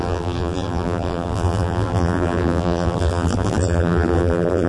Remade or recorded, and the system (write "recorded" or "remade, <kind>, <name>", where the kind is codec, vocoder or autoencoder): remade, vocoder, BigVGAN v2